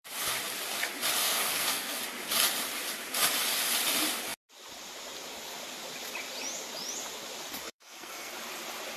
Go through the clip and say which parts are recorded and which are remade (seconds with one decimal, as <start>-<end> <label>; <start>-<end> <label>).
0.0-1.2 recorded; 1.2-2.0 remade; 2.0-7.5 recorded; 7.5-8.3 remade; 8.3-9.0 recorded